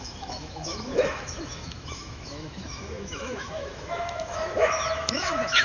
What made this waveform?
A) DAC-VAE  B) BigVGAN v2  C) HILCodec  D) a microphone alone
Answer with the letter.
A